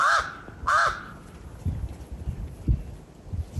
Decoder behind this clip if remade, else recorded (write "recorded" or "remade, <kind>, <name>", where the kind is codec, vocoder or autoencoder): recorded